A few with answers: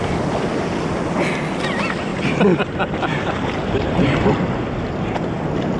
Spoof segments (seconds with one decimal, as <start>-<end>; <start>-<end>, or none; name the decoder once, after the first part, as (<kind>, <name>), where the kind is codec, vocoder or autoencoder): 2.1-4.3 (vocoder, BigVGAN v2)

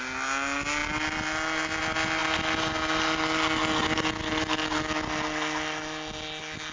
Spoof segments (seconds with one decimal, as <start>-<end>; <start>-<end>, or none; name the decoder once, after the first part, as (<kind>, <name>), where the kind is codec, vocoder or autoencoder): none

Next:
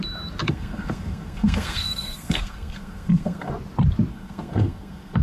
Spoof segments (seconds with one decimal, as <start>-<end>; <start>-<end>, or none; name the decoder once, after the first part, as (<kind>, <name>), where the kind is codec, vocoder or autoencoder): 0.4-3.5 (codec, SNAC); 4.1-5.2

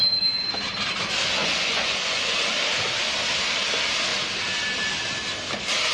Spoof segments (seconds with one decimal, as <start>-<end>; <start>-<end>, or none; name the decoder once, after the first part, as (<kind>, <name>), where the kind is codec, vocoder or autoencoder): 1.4-2.5 (vocoder, Vocos)